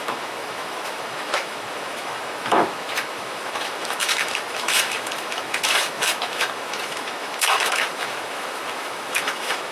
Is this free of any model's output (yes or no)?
no